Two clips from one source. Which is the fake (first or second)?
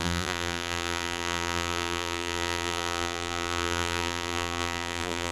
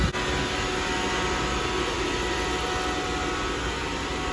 first